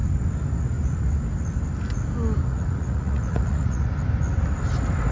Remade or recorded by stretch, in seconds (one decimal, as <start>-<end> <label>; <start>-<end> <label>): 0.0-2.4 recorded; 2.4-3.9 remade; 3.9-5.1 recorded